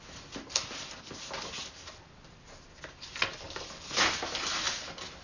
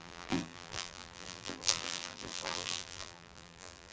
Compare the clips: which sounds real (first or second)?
first